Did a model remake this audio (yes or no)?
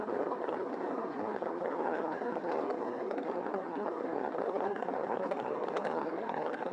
yes